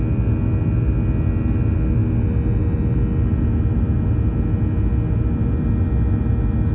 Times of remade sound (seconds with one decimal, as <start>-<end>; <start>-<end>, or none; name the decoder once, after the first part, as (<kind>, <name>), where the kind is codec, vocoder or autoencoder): none